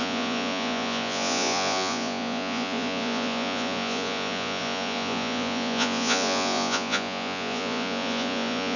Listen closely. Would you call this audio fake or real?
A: fake